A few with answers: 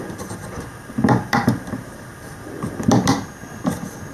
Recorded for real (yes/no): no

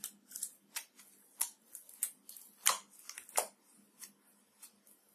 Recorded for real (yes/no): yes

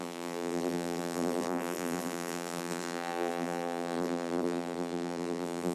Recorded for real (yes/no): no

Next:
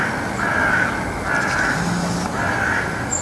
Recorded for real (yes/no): yes